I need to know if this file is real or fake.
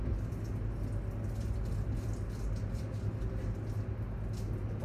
real